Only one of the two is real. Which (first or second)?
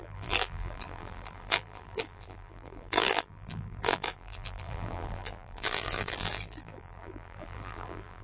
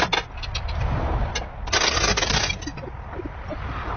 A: second